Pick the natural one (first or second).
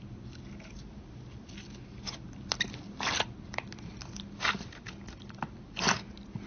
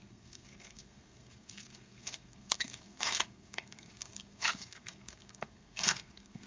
first